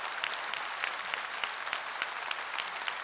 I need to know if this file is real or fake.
real